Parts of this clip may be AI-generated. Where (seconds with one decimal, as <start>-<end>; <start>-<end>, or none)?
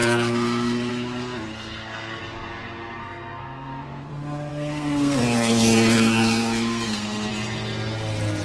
0.0-0.9; 1.5-2.2; 3.0-4.1; 4.5-7.3